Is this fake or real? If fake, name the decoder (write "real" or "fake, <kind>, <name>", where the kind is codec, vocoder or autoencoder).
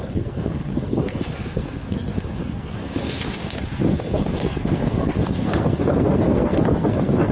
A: fake, codec, SNAC